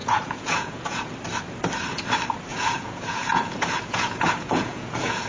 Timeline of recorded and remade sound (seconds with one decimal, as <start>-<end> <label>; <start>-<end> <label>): 0.0-1.1 remade; 1.1-2.5 recorded; 2.5-5.3 remade